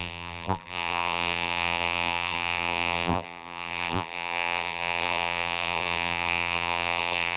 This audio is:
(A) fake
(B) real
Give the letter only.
A